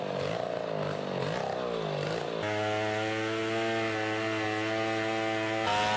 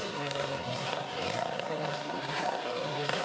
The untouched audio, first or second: first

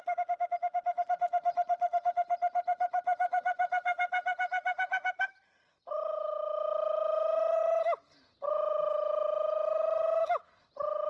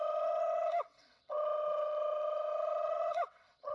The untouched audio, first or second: first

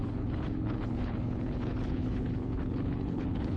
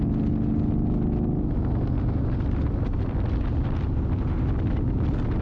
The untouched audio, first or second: second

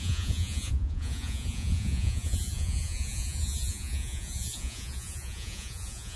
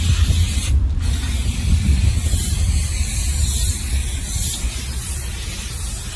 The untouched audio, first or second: second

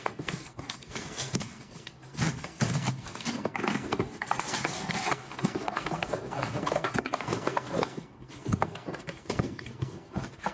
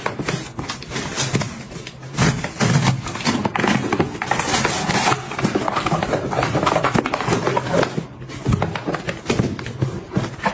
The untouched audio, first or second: second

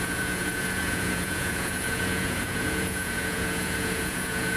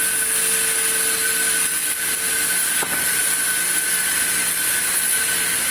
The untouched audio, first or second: second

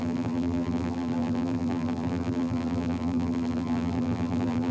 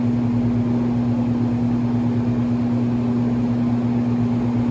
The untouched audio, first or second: second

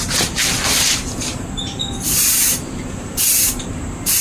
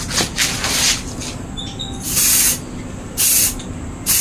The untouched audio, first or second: second